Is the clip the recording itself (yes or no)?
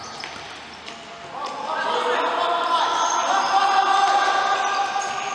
yes